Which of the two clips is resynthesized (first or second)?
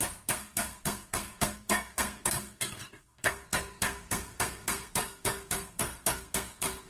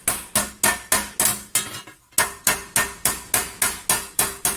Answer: first